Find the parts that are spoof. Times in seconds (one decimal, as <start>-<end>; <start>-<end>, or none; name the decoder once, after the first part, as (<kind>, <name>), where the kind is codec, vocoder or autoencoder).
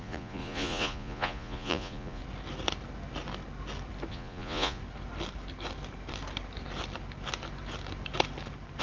0.0-2.2 (vocoder, Vocos); 4.1-4.8